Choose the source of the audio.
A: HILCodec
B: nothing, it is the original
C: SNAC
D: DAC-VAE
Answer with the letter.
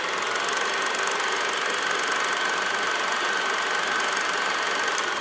B